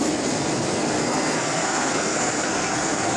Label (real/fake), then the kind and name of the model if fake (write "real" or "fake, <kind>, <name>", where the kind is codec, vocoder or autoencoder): fake, codec, SNAC